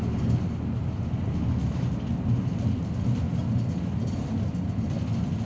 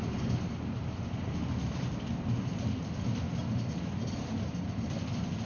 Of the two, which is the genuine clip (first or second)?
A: first